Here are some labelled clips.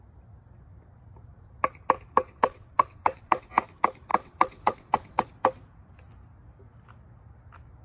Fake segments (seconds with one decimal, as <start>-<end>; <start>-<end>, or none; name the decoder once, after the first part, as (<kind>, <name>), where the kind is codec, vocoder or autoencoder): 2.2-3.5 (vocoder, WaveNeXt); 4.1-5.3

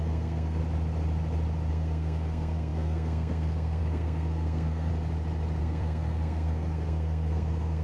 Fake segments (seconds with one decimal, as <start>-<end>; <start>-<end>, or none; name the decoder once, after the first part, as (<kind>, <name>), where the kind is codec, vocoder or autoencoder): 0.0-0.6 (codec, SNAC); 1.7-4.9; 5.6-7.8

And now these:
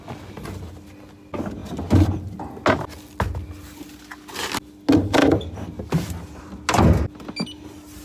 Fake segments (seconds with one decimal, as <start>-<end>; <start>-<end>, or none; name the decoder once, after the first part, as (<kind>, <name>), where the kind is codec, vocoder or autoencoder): none

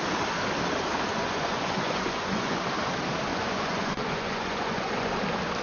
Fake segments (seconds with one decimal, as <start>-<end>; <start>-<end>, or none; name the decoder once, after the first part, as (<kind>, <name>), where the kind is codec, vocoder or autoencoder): 1.1-2.6 (vocoder, Vocos); 3.3-5.1

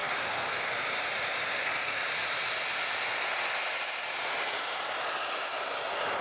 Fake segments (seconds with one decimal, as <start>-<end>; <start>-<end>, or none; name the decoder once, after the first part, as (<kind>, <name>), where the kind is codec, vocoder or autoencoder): 0.0-0.7 (codec, SNAC); 1.5-2.0